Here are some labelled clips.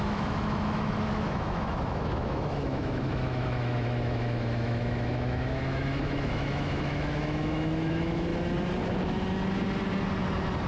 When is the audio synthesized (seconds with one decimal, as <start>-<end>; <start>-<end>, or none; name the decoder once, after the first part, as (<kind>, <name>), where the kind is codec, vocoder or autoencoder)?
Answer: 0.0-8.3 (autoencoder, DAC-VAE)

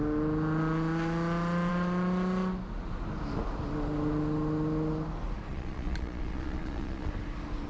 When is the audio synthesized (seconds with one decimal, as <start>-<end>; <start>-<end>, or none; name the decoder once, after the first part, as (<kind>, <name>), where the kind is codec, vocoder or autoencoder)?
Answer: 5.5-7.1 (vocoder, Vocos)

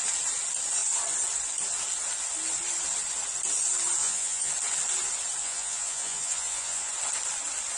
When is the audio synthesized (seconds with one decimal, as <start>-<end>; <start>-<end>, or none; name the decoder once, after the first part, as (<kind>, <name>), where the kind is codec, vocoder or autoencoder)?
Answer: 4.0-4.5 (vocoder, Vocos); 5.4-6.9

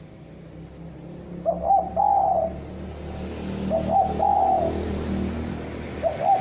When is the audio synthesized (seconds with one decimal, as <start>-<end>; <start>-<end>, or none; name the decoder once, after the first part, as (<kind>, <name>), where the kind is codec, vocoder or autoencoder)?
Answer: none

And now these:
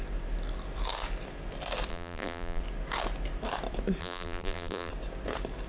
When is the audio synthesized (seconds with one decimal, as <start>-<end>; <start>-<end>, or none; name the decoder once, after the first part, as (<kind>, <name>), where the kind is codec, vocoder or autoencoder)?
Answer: 1.9-2.6 (vocoder, BigVGAN v2); 4.0-4.9